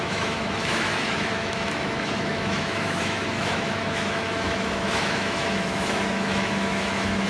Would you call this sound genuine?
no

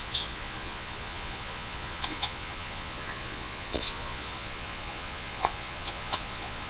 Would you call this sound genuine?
no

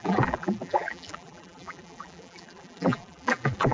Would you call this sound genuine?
no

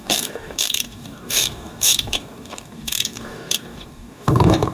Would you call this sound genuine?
no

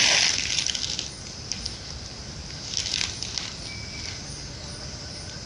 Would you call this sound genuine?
yes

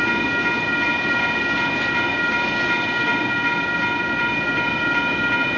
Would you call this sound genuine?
yes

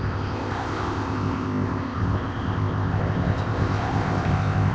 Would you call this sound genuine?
no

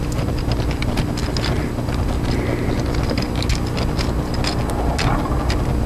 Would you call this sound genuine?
yes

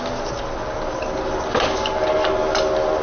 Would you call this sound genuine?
yes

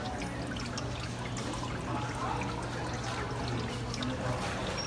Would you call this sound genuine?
yes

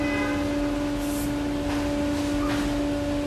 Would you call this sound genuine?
yes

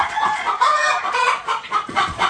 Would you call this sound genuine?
no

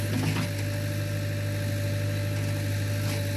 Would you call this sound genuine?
yes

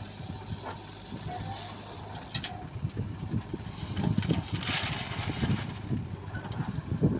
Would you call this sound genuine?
yes